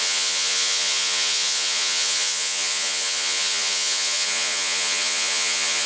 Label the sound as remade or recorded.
remade